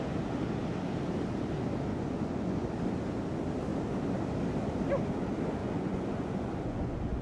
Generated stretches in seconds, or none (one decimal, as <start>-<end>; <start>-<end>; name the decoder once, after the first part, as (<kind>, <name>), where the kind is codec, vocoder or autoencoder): 1.9-2.7 (vocoder, Vocos); 5.6-7.2